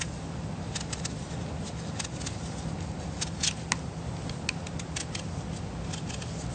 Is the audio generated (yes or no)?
no